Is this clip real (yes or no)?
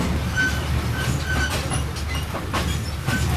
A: yes